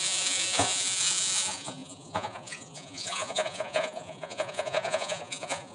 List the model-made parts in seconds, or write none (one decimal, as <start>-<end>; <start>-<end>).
0.0-5.7